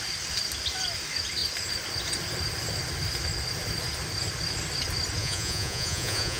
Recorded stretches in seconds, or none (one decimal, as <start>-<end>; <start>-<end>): 0.0-5.2